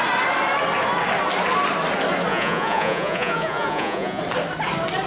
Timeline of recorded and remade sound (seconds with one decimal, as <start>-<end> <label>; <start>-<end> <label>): 0.0-2.3 recorded; 2.3-4.2 remade; 4.2-5.1 recorded